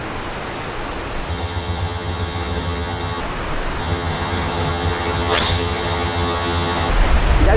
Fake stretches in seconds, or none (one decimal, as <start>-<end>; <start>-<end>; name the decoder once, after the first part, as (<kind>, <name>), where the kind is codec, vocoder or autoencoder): 1.3-3.2 (vocoder, HiFi-GAN); 3.8-6.9